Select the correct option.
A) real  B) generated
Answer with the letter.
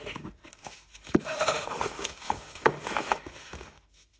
B